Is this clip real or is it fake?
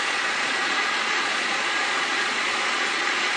fake